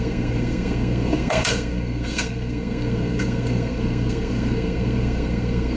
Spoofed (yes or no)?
yes